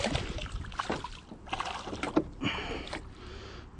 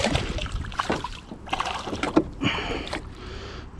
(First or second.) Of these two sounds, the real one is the first